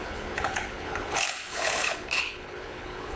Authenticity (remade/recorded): remade